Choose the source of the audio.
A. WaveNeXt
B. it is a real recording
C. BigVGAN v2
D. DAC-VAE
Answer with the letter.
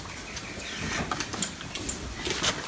B